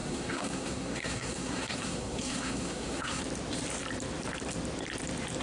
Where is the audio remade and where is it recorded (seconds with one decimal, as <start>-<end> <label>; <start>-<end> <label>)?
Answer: 0.0-3.2 remade; 3.2-5.4 recorded